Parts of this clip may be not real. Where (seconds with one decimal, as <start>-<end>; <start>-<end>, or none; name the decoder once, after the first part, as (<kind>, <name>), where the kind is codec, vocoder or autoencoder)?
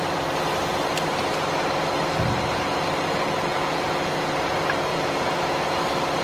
3.5-4.3 (vocoder, Vocos); 4.9-5.8